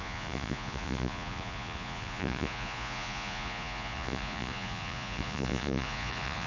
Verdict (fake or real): fake